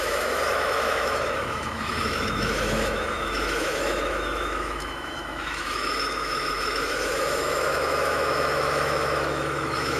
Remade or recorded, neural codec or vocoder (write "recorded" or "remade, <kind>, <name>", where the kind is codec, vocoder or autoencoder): remade, autoencoder, DAC-VAE